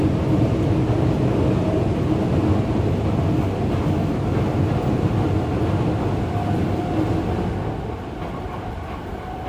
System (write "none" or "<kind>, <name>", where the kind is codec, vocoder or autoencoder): none